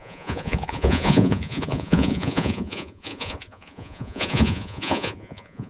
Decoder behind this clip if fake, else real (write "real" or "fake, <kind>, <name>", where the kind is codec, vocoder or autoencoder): fake, vocoder, Vocos